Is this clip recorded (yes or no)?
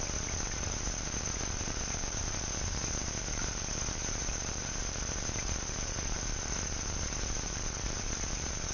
no